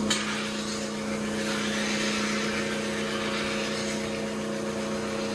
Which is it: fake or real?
real